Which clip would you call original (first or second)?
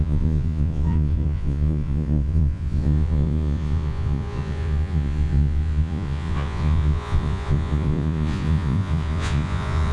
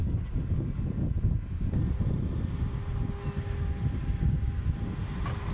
second